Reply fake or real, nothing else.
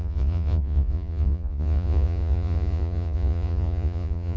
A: fake